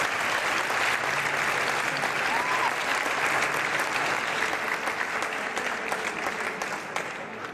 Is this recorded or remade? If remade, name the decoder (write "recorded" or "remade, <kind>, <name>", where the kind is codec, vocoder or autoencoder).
recorded